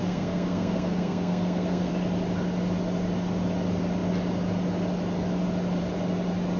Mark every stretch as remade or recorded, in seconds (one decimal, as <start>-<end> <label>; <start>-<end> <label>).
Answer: 0.0-1.9 remade; 1.9-6.6 recorded